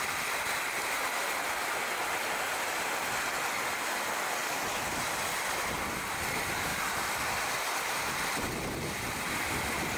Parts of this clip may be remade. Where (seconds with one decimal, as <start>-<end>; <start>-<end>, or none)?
none